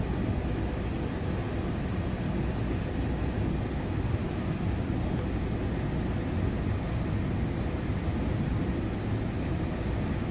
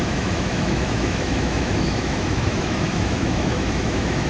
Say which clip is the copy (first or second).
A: second